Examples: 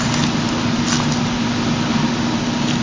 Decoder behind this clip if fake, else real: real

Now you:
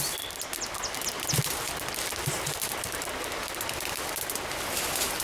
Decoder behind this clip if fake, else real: real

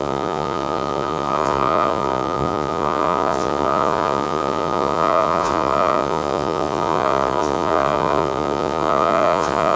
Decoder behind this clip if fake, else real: fake, vocoder, Vocos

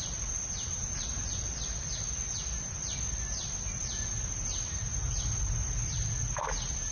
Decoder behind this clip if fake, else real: real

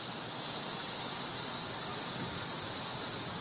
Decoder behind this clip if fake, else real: real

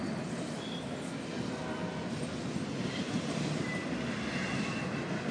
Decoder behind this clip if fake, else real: real